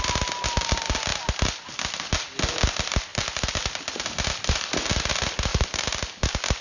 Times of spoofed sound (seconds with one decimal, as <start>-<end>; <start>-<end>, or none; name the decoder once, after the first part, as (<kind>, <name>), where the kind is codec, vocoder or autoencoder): 1.1-1.7 (vocoder, BigVGAN v2); 5.5-6.0